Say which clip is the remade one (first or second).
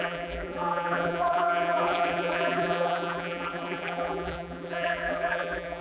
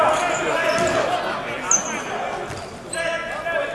first